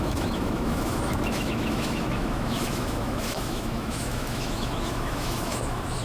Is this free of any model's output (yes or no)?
no